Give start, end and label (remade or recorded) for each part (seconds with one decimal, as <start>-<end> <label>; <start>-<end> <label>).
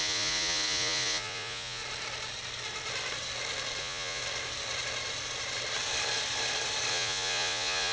0.0-1.8 remade; 1.8-3.8 recorded; 3.8-4.2 remade; 4.2-6.9 recorded; 6.9-7.9 remade